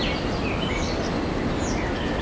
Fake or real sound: real